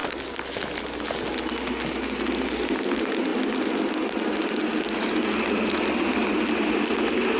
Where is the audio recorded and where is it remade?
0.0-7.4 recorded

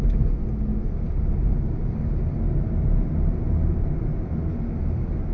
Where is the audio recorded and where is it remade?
0.0-5.3 recorded

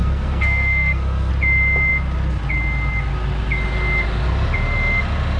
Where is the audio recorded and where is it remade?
0.0-1.3 remade; 1.3-5.4 recorded

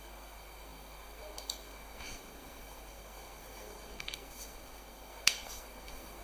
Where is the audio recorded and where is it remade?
0.0-6.2 remade

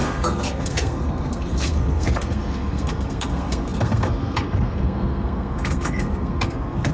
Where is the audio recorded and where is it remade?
0.0-6.9 remade

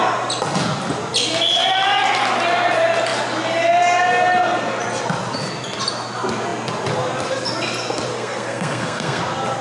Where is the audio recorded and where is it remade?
0.0-8.1 recorded; 8.1-9.2 remade; 9.2-9.6 recorded

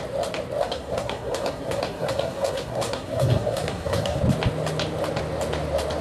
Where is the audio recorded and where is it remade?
0.0-0.6 recorded; 0.6-4.2 remade; 4.2-6.0 recorded